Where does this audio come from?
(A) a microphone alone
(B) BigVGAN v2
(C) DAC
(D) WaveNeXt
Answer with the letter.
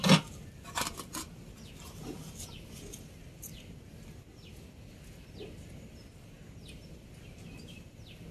A